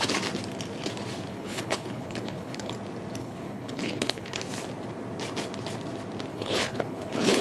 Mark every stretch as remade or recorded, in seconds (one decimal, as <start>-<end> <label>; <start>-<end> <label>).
0.0-1.3 recorded; 1.3-2.7 remade; 2.7-3.2 recorded; 3.2-4.4 remade; 4.4-6.3 recorded; 6.3-7.4 remade